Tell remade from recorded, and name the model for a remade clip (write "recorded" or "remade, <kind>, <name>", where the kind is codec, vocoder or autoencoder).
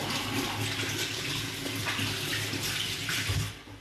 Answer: recorded